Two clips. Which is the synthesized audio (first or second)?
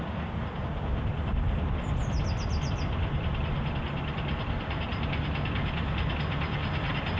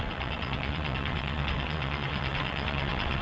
second